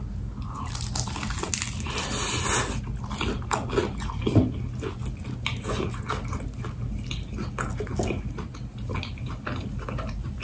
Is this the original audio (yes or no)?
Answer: yes